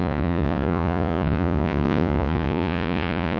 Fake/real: fake